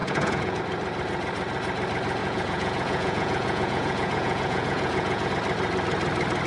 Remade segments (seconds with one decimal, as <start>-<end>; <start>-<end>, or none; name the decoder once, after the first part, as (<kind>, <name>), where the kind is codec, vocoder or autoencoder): 0.0-0.6 (vocoder, Vocos); 2.2-5.3